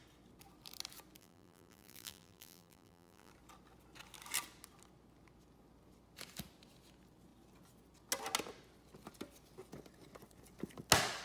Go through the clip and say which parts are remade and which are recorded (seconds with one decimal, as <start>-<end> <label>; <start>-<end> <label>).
0.0-1.2 recorded; 1.2-3.3 remade; 3.3-11.2 recorded